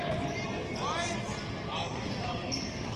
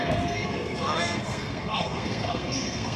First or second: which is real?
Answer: first